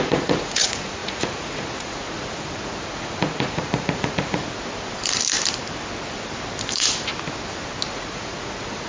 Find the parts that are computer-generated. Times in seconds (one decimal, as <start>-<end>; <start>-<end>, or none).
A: 0.0-4.4; 7.9-8.9